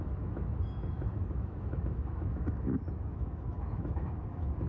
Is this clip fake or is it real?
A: fake